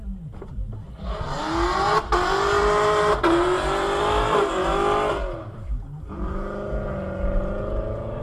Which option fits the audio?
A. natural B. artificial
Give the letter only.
A